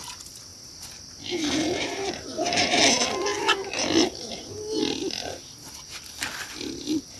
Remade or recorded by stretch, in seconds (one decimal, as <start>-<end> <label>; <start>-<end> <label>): 0.0-0.5 recorded; 0.5-2.8 remade; 2.8-7.2 recorded